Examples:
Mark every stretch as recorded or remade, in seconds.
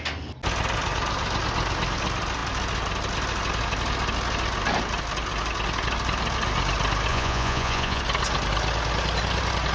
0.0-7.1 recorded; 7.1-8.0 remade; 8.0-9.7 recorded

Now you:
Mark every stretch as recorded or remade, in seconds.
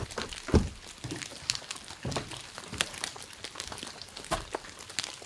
0.0-1.3 recorded; 1.3-4.5 remade; 4.5-5.3 recorded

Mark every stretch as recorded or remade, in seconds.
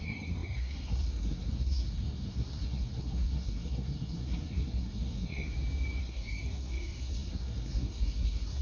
0.0-5.5 remade; 5.5-6.0 recorded; 6.0-8.6 remade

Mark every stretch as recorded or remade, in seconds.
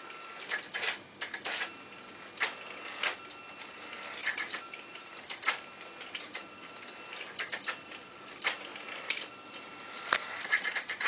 0.0-11.1 recorded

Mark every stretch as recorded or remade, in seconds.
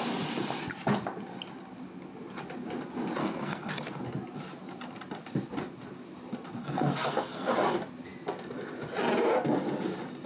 0.0-3.2 recorded; 3.2-3.7 remade; 3.7-6.6 recorded; 6.6-7.5 remade; 7.5-10.3 recorded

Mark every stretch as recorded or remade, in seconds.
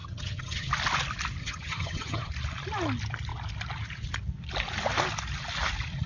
0.0-0.7 remade; 0.7-1.4 recorded; 1.4-2.3 remade; 2.3-6.1 recorded